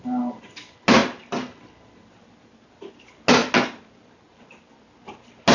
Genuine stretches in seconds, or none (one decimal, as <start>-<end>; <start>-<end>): 0.0-5.5